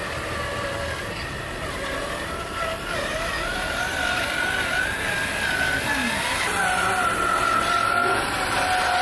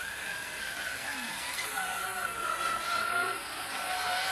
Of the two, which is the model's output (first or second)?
second